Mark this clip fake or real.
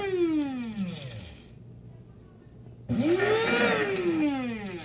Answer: real